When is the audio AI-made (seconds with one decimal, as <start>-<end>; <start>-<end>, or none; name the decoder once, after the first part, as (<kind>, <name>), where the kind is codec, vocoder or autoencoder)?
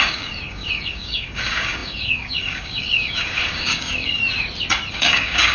0.0-4.2 (codec, DAC); 4.9-5.5